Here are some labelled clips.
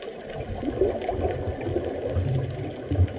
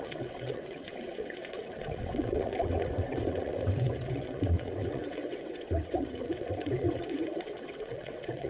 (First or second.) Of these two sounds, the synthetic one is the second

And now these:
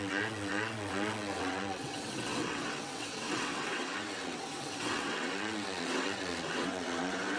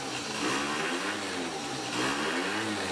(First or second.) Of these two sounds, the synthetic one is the first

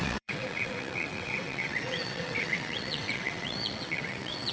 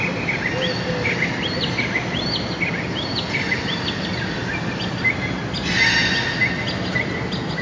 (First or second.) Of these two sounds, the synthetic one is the first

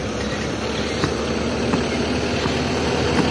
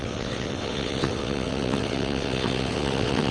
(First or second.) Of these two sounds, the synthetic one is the second